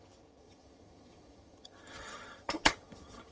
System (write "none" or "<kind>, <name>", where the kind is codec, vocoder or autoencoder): vocoder, HiFi-GAN